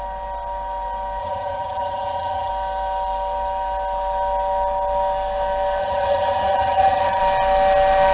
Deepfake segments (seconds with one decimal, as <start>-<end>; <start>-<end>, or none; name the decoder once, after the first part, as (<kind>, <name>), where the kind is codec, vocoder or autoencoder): 1.2-2.5 (vocoder, HiFi-GAN); 5.8-7.2